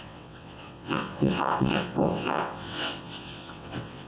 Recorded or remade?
remade